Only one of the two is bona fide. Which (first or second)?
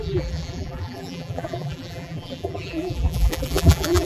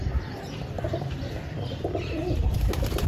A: second